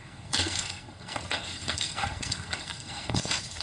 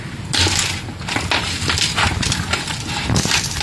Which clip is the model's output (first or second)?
first